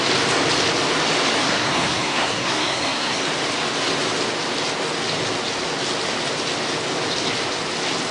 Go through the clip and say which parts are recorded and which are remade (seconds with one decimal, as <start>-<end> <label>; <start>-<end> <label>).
0.0-1.4 recorded; 1.4-3.2 remade; 3.2-8.1 recorded